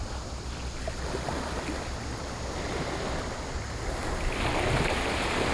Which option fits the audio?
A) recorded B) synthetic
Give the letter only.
A